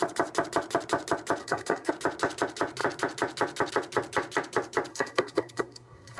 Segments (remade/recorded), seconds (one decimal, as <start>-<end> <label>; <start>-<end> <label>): 0.0-1.4 recorded; 1.4-1.9 remade; 1.9-4.9 recorded; 4.9-6.2 remade